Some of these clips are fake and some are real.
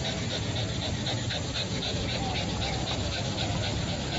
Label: real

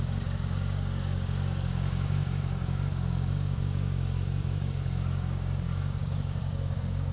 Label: fake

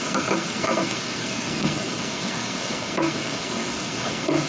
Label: fake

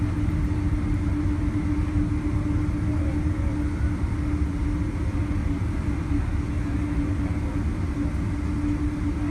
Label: real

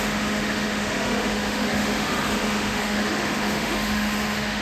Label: fake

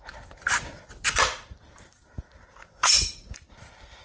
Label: fake